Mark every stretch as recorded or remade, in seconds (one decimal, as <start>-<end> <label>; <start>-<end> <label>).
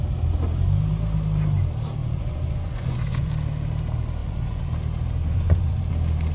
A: 0.0-2.0 recorded; 2.0-3.3 remade; 3.3-4.2 recorded; 4.2-4.7 remade; 4.7-5.2 recorded; 5.2-5.8 remade; 5.8-6.3 recorded